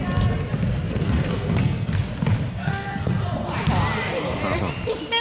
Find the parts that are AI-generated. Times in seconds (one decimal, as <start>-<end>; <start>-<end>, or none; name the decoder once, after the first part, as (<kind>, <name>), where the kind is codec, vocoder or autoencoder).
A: 0.9-2.0 (codec, SNAC); 2.5-3.1